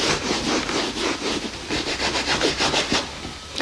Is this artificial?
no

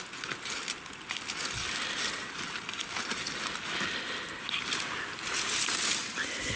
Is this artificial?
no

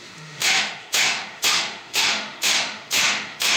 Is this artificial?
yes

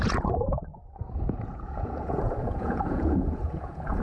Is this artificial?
yes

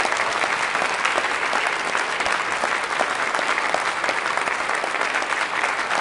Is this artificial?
no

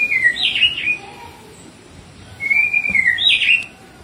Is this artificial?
yes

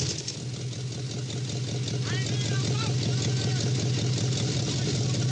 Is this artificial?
no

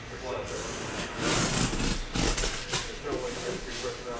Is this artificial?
no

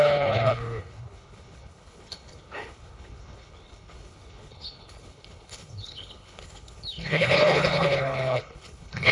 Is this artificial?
yes